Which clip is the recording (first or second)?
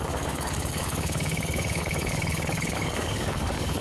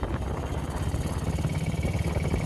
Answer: second